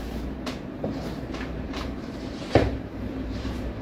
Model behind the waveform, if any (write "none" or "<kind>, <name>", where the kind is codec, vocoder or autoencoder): vocoder, BigVGAN v2